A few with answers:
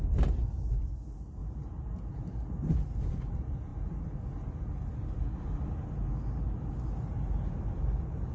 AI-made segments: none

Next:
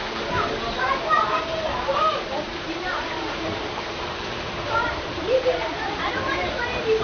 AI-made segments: 0.0-7.0 (vocoder, BigVGAN v2)

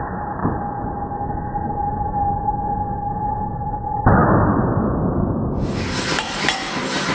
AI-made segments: 0.0-0.4 (vocoder, BigVGAN v2); 3.2-4.2; 6.0-7.1

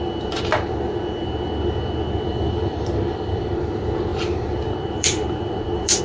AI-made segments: 2.3-3.4 (vocoder, BigVGAN v2); 4.1-6.0

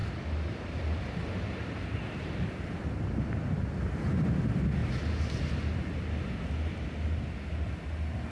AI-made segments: 0.0-4.8 (vocoder, BigVGAN v2)

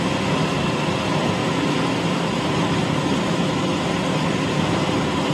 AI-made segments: 0.0-1.4 (vocoder, BigVGAN v2); 3.1-3.7

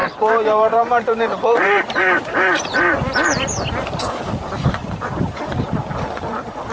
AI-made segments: 0.0-4.0 (vocoder, BigVGAN v2); 4.8-5.8